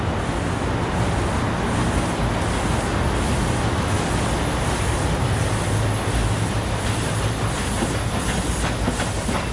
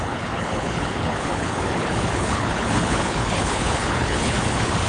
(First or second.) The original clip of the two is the first